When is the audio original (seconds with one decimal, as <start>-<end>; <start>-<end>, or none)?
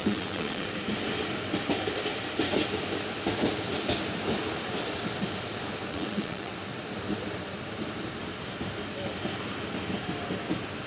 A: 0.7-5.9; 6.5-10.9